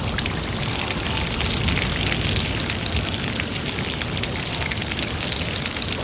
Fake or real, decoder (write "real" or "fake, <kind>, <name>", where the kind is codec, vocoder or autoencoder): real